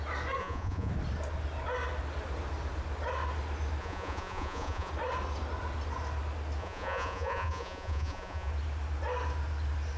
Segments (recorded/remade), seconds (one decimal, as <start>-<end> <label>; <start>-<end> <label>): 0.0-0.4 recorded; 0.4-0.9 remade; 0.9-3.8 recorded; 3.8-4.9 remade; 4.9-6.6 recorded; 6.6-8.5 remade; 8.5-10.0 recorded